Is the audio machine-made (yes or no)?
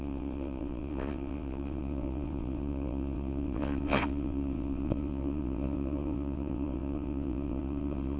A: yes